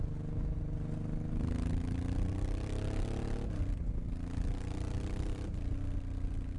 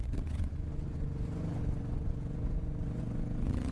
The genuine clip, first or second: first